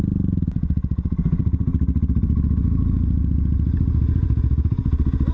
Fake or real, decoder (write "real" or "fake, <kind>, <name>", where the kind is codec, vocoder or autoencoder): real